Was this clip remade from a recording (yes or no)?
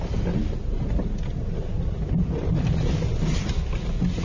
no